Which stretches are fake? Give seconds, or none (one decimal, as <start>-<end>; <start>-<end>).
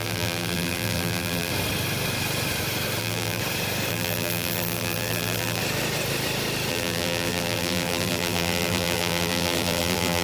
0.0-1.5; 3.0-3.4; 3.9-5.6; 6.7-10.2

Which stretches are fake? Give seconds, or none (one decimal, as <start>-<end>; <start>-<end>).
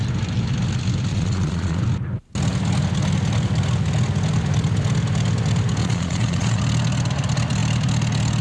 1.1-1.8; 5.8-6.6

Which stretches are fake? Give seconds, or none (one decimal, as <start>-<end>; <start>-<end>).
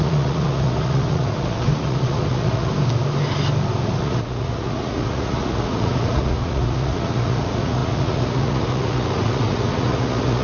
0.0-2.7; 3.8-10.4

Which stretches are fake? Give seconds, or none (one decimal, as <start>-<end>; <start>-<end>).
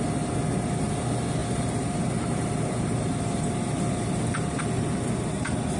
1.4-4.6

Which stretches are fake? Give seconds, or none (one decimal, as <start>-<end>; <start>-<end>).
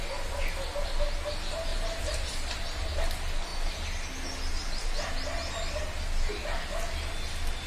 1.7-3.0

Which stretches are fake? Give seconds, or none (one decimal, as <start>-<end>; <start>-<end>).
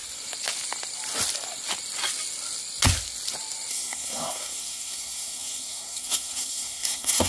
3.7-7.3